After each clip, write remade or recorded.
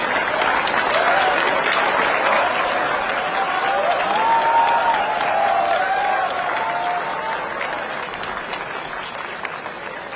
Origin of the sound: recorded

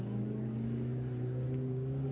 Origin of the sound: recorded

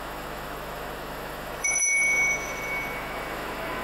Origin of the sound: remade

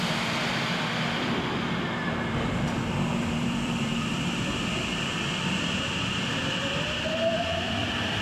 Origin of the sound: remade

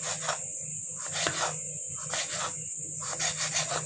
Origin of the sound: recorded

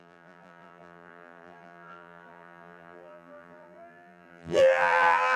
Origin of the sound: remade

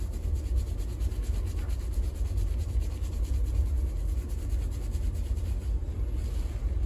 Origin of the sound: recorded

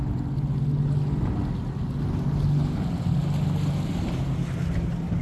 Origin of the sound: recorded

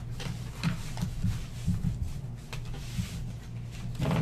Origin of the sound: recorded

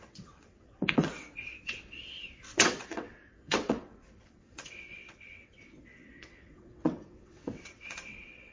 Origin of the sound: remade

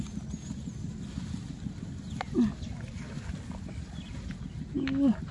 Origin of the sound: recorded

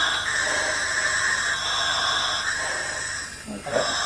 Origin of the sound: recorded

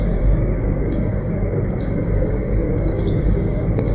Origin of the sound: remade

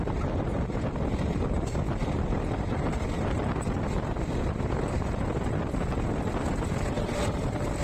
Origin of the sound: recorded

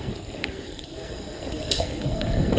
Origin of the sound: remade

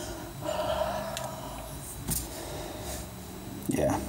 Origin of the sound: recorded